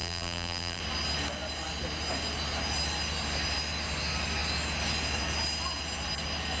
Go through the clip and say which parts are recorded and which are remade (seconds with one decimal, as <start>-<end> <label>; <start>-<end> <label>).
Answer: 0.0-0.8 remade; 0.8-6.6 recorded